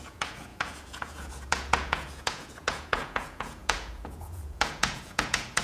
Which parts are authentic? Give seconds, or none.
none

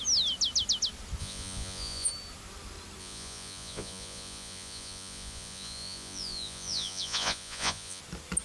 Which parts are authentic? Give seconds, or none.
0.0-1.2; 2.1-3.0; 8.0-8.4